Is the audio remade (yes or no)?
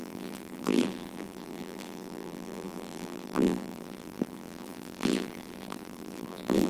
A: yes